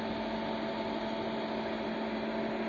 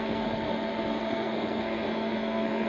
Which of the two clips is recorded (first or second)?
first